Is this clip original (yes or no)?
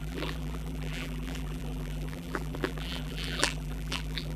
no